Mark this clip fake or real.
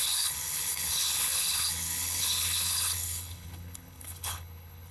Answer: fake